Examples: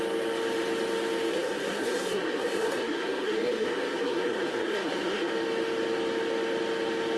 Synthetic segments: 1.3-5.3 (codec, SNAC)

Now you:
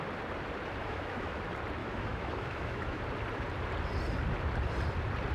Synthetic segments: 0.8-1.4 (autoencoder, DAC-VAE); 1.8-3.0

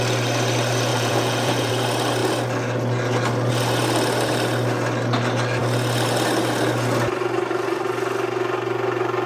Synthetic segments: 0.9-1.7 (vocoder, Vocos)

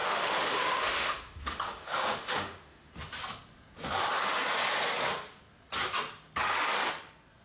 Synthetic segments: 0.0-2.9 (autoencoder, DAC-VAE)

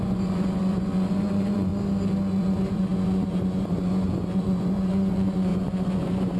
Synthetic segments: 0.0-1.7 (vocoder, Vocos); 2.4-6.4

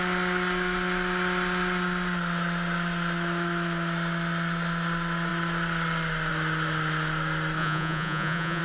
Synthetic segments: 7.6-8.6 (vocoder, Vocos)